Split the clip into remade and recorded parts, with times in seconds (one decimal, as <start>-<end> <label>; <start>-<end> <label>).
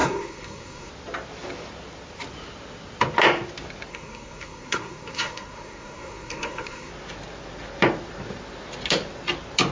0.0-0.9 remade; 0.9-3.9 recorded; 3.9-6.9 remade; 6.9-9.7 recorded